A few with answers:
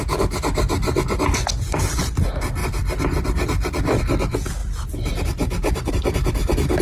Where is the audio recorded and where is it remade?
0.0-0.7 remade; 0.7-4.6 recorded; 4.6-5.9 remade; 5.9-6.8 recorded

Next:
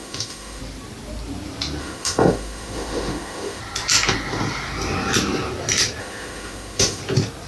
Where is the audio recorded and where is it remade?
0.0-0.6 remade; 0.6-1.8 recorded; 1.8-3.6 remade; 3.6-6.0 recorded; 6.0-7.0 remade; 7.0-7.5 recorded

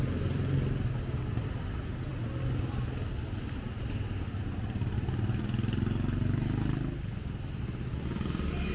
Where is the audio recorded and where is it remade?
0.0-8.7 recorded

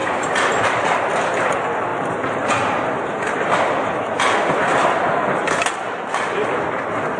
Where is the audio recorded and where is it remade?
0.0-1.0 remade; 1.0-7.2 recorded

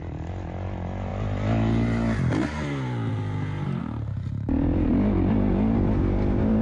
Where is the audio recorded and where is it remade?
0.0-6.6 recorded

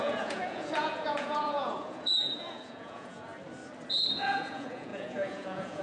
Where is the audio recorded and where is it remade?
0.0-3.3 remade; 3.3-4.1 recorded; 4.1-5.8 remade

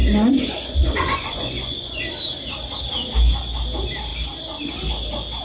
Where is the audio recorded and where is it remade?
0.0-2.0 remade; 2.0-5.4 recorded

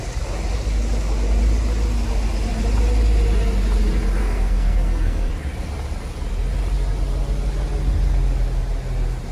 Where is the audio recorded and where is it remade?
0.0-4.2 recorded; 4.2-5.3 remade; 5.3-9.3 recorded